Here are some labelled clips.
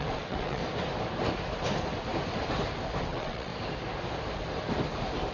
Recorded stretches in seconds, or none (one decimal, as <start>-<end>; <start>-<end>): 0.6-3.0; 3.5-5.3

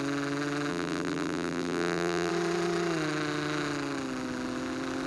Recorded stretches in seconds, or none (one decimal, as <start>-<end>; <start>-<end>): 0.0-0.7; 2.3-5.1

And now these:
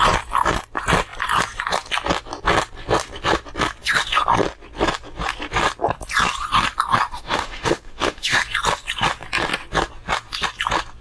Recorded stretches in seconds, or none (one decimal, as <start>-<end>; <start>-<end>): 0.0-7.1; 8.4-11.0